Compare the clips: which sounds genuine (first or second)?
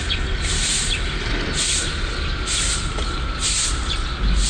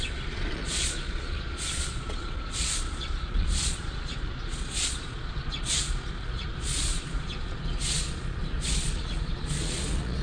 first